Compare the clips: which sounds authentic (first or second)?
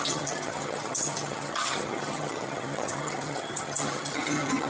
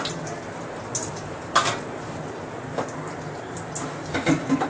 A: second